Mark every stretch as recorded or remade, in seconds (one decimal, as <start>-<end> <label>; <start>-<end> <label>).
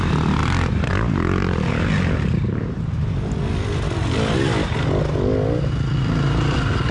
0.0-6.9 recorded